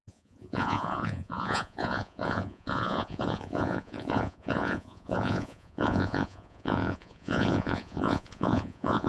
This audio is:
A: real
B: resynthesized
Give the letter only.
B